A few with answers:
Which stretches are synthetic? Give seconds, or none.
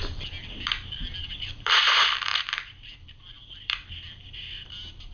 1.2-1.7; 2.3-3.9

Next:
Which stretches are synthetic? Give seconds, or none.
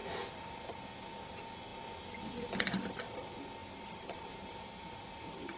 0.0-0.7; 3.6-5.6